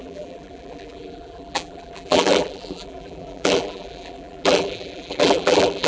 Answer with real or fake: fake